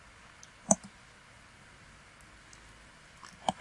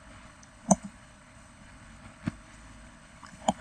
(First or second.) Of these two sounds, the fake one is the second